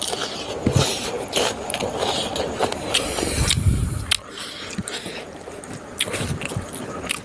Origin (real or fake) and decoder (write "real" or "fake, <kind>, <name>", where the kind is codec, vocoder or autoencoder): real